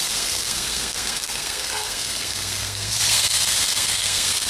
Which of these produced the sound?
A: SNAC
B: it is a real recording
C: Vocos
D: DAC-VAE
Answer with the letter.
A